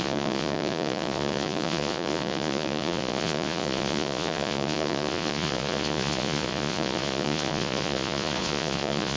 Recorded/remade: remade